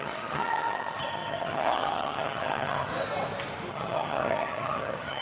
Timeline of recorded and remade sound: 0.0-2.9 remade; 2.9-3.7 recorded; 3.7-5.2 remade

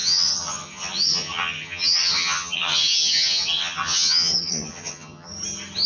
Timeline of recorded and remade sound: 0.0-5.3 remade; 5.3-5.9 recorded

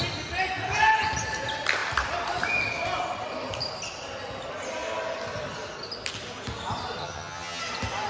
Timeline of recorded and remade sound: 0.0-7.0 recorded; 7.0-7.6 remade; 7.6-8.1 recorded

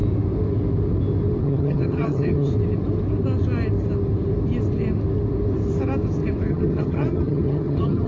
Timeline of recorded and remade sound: 0.0-1.4 recorded; 1.4-2.5 remade; 2.5-6.5 recorded; 6.5-8.1 remade

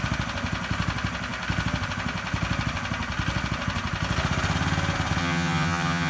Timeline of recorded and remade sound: 0.0-5.2 recorded; 5.2-6.1 remade

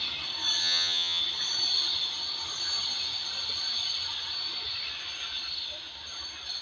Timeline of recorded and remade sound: 0.0-0.6 recorded; 0.6-1.2 remade; 1.2-6.6 recorded

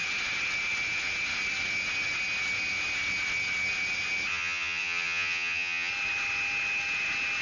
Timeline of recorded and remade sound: 0.0-4.3 recorded; 4.3-5.9 remade; 5.9-7.4 recorded